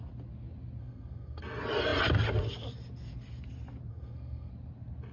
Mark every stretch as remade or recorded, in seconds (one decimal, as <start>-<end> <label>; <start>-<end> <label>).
0.0-0.8 recorded; 0.8-1.4 remade; 1.4-3.9 recorded; 3.9-4.5 remade; 4.5-5.1 recorded